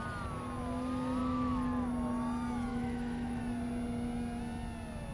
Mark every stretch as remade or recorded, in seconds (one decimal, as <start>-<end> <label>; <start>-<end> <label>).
0.0-1.2 recorded; 1.2-1.9 remade; 1.9-2.7 recorded; 2.7-3.4 remade; 3.4-5.1 recorded